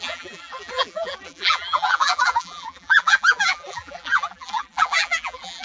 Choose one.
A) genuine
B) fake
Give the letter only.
B